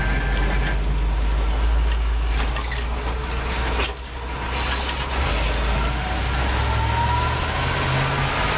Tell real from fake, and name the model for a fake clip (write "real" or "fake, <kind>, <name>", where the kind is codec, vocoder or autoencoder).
real